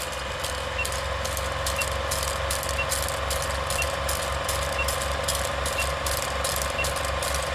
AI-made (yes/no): no